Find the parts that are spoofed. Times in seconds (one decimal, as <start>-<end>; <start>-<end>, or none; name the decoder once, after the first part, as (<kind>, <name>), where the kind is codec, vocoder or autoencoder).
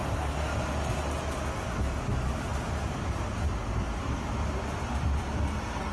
none